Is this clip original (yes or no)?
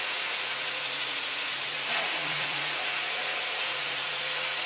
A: no